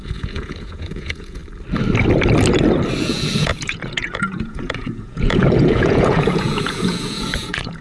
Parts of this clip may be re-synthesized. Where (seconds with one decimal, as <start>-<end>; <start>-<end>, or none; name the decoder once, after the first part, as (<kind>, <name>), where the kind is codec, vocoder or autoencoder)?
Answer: 0.0-1.4 (vocoder, Vocos); 3.0-7.8